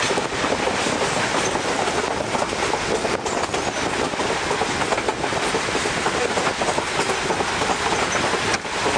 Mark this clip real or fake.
real